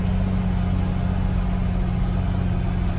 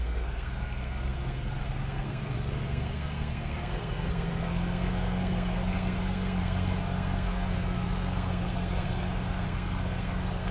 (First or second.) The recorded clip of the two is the first